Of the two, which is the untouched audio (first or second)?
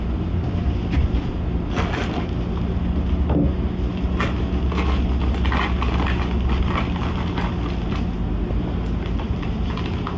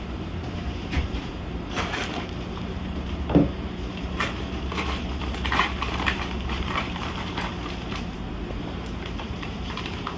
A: first